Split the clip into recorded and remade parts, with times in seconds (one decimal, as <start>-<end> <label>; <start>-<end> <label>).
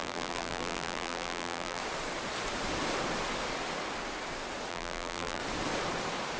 0.0-1.8 remade; 1.8-4.7 recorded; 4.7-5.4 remade; 5.4-6.4 recorded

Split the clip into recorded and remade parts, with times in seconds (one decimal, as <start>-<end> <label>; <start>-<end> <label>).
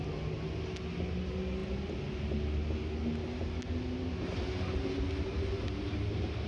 0.0-6.5 recorded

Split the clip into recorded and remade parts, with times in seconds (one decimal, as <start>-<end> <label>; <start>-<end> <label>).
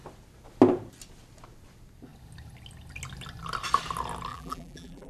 0.0-4.3 recorded; 4.3-5.1 remade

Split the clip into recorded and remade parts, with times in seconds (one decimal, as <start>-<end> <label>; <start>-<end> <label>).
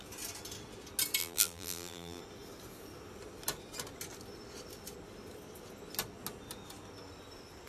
0.0-1.2 recorded; 1.2-2.2 remade; 2.2-7.7 recorded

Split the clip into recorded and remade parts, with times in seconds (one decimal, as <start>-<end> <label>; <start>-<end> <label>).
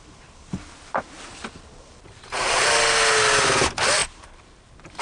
0.0-1.3 recorded; 1.3-2.8 remade; 2.8-4.0 recorded; 4.0-5.0 remade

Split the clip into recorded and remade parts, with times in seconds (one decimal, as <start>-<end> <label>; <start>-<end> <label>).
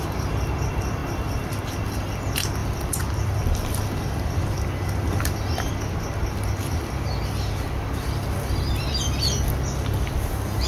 0.0-1.0 recorded; 1.0-1.6 remade; 1.6-2.6 recorded; 2.6-5.7 remade; 5.7-10.7 recorded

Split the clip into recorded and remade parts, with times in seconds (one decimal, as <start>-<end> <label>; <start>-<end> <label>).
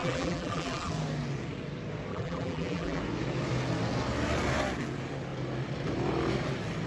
0.0-0.9 remade; 0.9-2.1 recorded; 2.1-3.0 remade; 3.0-6.9 recorded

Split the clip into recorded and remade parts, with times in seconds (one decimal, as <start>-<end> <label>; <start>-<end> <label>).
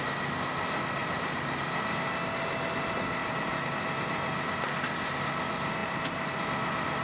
0.0-1.0 recorded; 1.0-1.6 remade; 1.6-3.2 recorded; 3.2-3.7 remade; 3.7-5.8 recorded; 5.8-6.4 remade; 6.4-7.0 recorded